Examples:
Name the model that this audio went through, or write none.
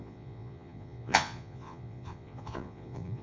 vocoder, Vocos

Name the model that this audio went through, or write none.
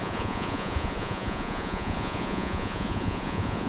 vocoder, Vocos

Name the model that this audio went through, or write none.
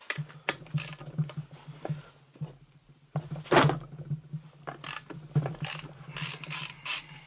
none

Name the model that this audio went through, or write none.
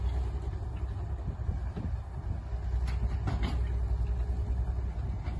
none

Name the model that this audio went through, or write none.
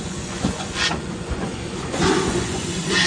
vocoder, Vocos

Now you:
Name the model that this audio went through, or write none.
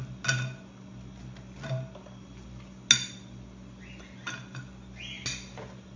none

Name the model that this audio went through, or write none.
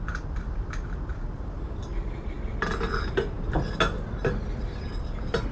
none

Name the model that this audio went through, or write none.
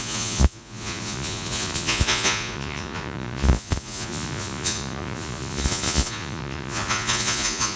vocoder, Vocos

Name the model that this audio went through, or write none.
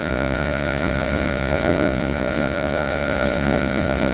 vocoder, Vocos